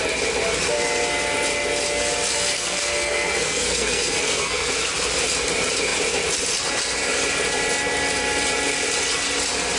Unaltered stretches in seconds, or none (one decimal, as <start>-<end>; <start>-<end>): 0.0-2.3; 4.7-9.8